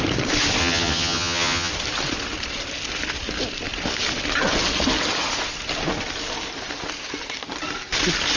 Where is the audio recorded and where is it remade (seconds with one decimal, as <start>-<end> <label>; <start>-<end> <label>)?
0.0-0.6 recorded; 0.6-1.7 remade; 1.7-8.4 recorded